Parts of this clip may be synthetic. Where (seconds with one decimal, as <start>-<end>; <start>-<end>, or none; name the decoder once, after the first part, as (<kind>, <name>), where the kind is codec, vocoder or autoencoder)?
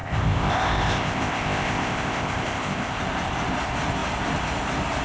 0.0-3.0 (codec, ZipCodec)